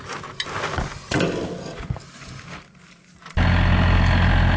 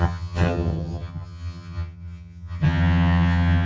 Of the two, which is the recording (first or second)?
first